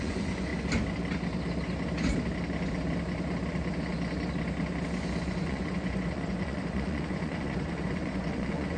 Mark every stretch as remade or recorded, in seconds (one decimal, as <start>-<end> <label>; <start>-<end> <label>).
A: 0.0-0.5 remade; 0.5-5.3 recorded; 5.3-8.8 remade